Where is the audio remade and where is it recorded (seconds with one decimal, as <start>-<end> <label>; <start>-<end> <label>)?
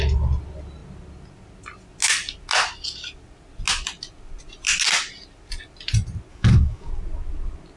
0.0-6.3 recorded; 6.3-6.9 remade; 6.9-7.8 recorded